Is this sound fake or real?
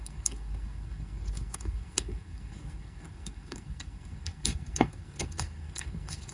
fake